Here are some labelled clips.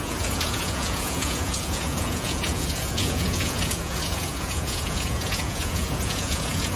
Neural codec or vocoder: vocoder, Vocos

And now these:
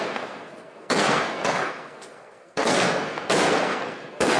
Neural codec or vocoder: codec, SNAC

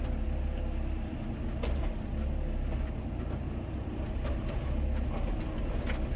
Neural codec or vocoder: none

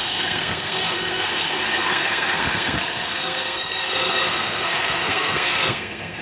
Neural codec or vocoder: codec, SNAC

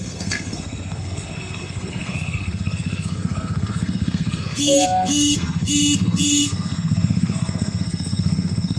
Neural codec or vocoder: codec, SNAC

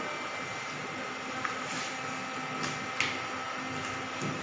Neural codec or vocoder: none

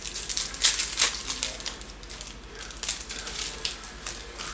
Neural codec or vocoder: none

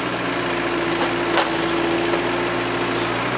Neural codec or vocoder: none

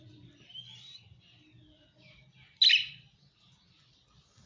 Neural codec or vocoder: none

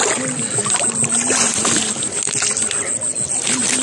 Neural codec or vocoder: none